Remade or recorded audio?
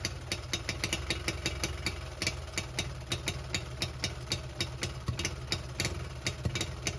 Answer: recorded